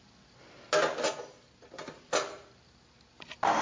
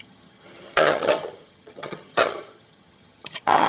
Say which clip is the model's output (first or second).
second